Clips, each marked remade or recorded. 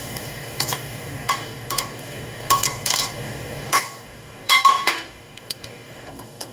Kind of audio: remade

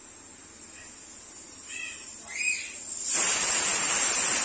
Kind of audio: recorded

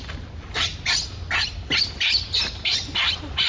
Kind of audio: recorded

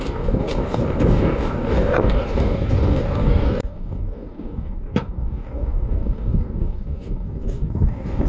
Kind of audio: remade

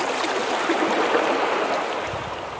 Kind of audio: recorded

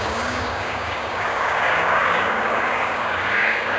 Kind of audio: remade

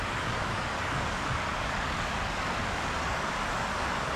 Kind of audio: remade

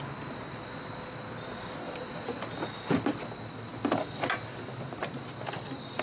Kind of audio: recorded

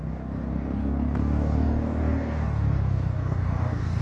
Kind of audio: remade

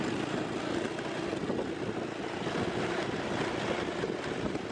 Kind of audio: recorded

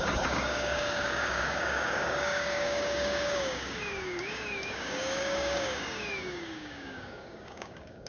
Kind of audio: remade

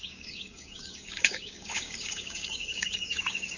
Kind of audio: remade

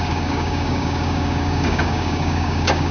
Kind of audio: remade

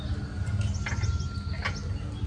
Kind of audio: recorded